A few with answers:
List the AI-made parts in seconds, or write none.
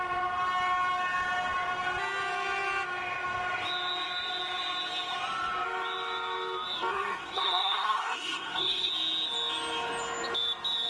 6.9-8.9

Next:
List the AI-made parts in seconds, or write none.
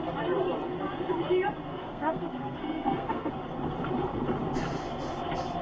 1.7-3.3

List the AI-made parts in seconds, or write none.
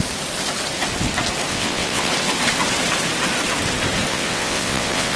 1.5-2.1; 4.1-5.2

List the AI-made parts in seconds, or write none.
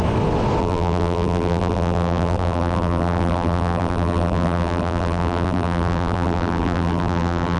0.6-7.6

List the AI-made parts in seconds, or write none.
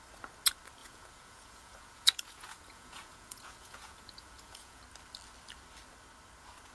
0.8-4.8